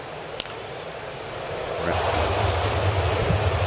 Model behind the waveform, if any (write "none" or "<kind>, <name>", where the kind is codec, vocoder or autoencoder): none